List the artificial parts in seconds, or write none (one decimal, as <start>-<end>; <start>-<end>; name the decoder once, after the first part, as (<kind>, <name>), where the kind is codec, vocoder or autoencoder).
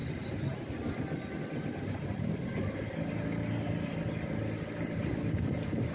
none